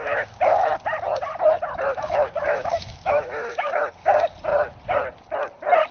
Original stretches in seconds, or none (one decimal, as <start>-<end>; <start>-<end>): 0.7-1.9; 3.8-5.9